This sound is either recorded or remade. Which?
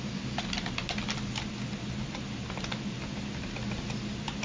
recorded